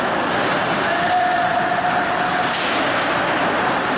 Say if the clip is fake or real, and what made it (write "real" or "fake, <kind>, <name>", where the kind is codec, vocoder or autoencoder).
real